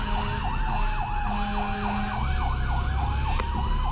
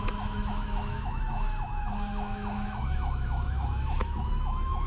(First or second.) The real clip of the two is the first